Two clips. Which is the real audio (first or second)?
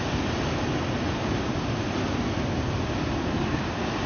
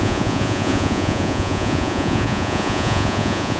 first